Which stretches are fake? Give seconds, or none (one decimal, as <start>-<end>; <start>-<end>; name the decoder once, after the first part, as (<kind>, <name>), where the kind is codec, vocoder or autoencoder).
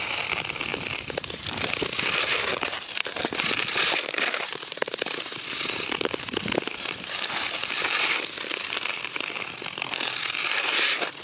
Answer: 0.0-11.2 (vocoder, BigVGAN v2)